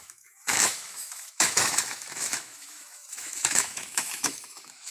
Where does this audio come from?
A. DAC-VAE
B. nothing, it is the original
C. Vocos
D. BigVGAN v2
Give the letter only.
A